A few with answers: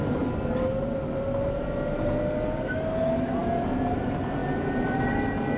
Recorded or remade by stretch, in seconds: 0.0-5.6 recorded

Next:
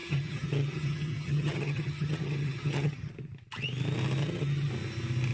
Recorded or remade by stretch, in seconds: 0.0-3.1 remade; 3.1-4.2 recorded; 4.2-4.7 remade; 4.7-5.3 recorded

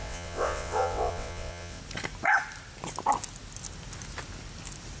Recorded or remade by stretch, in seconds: 0.0-1.8 remade; 1.8-5.0 recorded

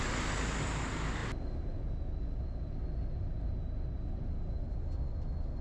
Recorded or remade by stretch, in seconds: 0.0-5.6 recorded